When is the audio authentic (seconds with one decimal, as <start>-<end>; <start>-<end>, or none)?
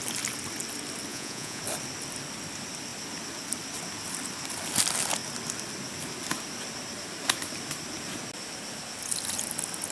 0.0-1.1; 1.6-9.9